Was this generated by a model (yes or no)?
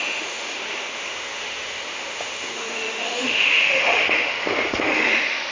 yes